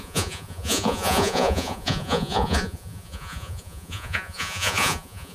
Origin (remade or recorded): remade